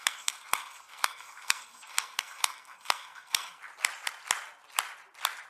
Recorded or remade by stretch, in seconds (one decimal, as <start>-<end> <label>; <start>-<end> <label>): 0.0-3.6 remade; 3.6-5.5 recorded